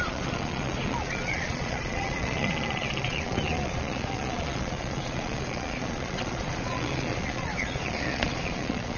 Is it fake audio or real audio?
fake